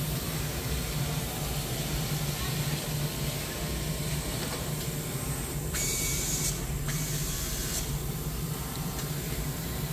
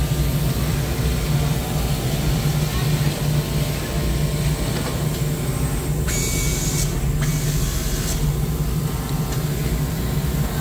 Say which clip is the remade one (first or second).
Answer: first